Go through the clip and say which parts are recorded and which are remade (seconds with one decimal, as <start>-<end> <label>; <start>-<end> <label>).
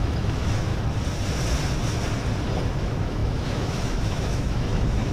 0.0-0.7 remade; 0.7-2.8 recorded; 2.8-5.1 remade